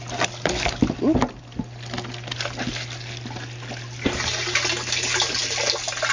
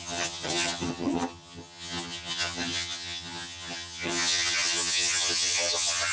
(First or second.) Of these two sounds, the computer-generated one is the second